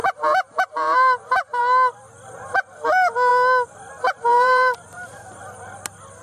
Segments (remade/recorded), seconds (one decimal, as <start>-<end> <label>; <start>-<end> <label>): 0.0-1.6 remade; 1.6-4.3 recorded; 4.3-5.4 remade; 5.4-6.2 recorded